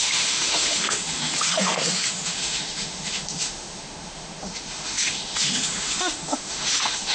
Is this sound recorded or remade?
remade